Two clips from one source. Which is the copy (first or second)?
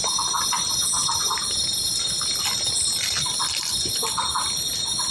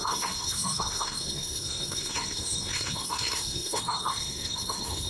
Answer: second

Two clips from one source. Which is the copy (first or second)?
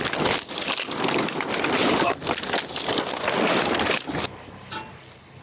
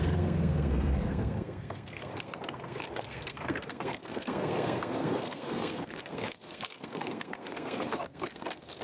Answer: second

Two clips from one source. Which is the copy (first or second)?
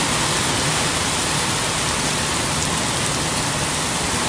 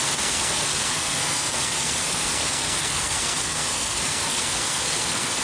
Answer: second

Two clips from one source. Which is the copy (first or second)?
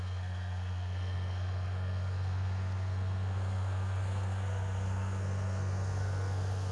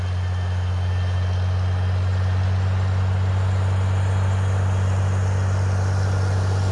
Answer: first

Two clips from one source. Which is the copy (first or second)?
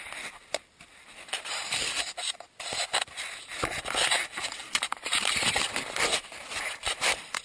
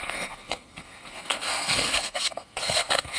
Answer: second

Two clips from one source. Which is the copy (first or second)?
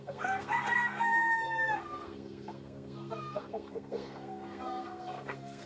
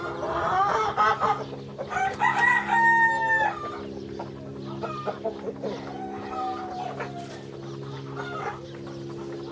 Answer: first